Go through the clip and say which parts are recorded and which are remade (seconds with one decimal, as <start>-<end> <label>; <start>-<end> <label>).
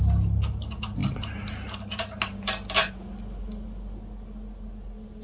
0.0-5.2 recorded